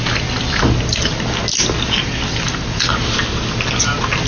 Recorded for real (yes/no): yes